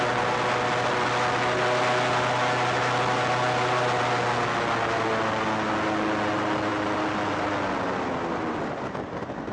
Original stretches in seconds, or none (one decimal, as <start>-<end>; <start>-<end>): 0.0-9.5